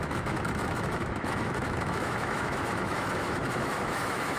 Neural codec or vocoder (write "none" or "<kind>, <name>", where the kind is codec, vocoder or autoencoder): autoencoder, DAC-VAE